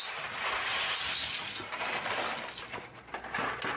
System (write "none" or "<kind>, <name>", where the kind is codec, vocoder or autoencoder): none